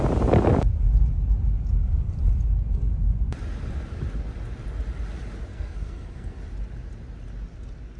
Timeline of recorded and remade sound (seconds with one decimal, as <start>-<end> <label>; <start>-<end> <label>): 0.0-5.5 recorded; 5.5-6.4 remade; 6.4-8.0 recorded